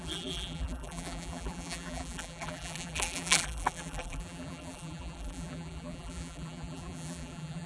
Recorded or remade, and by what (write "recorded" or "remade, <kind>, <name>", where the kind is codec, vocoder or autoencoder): remade, vocoder, BigVGAN v2